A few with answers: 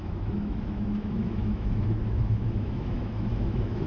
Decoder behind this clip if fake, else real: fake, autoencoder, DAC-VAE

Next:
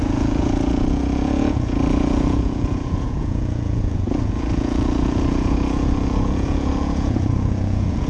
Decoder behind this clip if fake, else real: fake, vocoder, Vocos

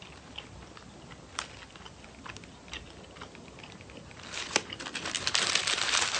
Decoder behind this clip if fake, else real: real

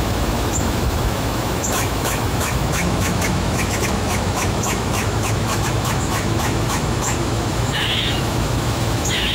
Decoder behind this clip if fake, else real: fake, autoencoder, DAC-VAE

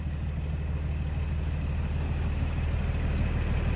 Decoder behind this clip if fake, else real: real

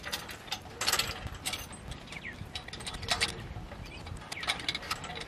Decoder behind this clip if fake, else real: real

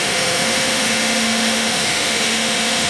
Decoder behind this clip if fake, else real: fake, autoencoder, DAC-VAE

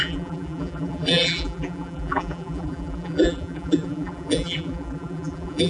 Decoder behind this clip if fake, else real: fake, vocoder, BigVGAN v2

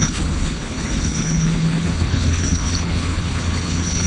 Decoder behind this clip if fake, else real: fake, codec, HILCodec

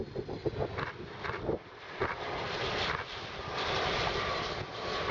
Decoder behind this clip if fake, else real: real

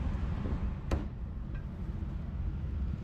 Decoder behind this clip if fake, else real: real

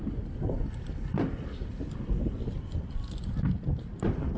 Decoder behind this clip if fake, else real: real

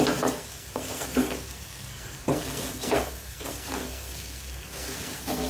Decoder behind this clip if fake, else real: fake, codec, SNAC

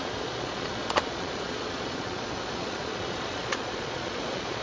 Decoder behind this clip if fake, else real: fake, vocoder, Vocos